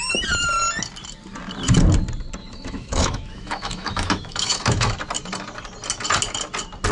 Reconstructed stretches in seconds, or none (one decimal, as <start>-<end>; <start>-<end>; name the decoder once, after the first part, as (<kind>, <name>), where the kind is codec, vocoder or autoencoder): 2.4-5.0 (autoencoder, DAC-VAE)